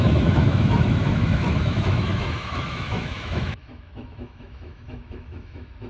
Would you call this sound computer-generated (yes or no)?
yes